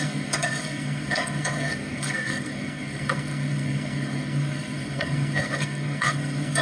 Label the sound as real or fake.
fake